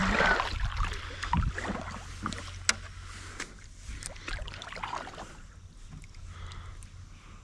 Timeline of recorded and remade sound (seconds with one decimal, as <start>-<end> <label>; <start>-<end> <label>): 0.0-7.4 recorded